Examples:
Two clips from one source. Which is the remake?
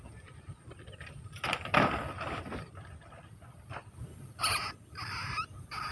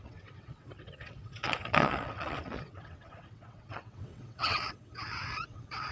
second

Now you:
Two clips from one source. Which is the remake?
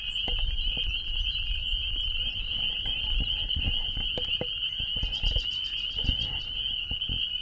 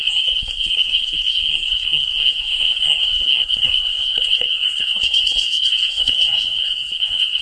second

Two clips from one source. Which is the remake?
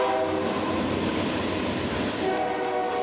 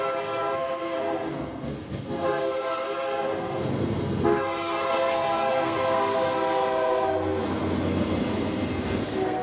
second